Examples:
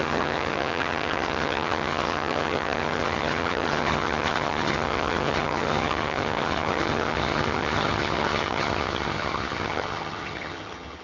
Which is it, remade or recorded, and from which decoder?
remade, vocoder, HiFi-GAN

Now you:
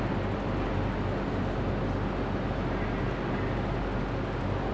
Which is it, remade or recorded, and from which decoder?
recorded